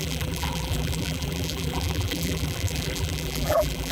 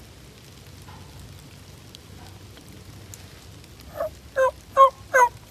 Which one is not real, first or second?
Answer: first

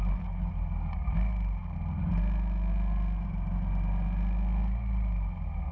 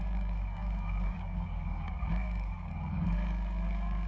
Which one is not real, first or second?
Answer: second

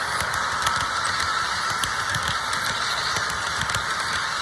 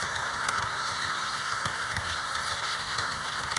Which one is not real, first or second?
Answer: second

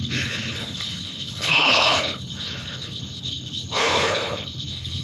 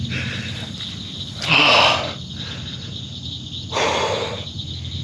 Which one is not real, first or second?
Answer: first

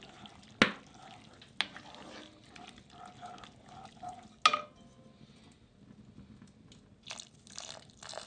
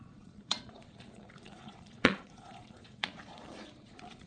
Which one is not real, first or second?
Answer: second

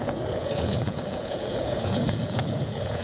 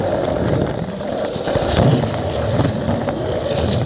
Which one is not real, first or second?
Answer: first